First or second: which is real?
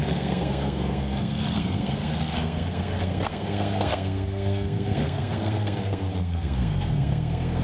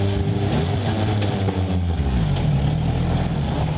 second